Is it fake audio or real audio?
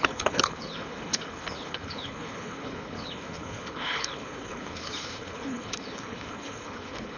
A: fake